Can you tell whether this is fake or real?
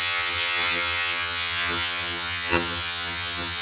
fake